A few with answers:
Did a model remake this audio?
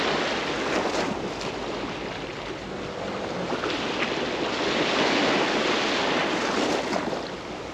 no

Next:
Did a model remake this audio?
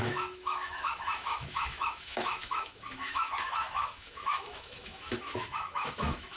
yes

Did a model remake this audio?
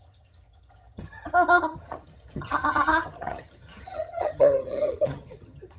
yes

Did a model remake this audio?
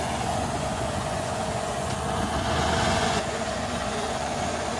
yes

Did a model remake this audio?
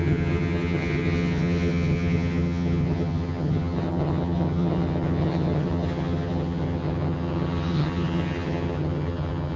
yes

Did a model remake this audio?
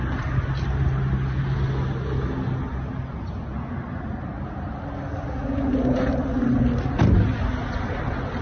no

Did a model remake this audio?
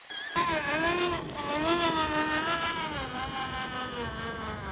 no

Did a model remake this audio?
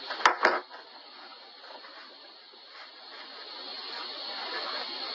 no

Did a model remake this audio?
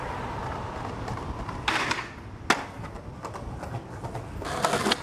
no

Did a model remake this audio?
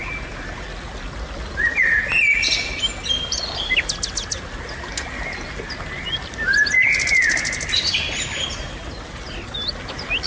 no